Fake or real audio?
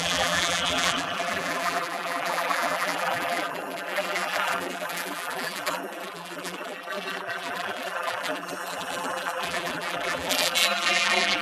fake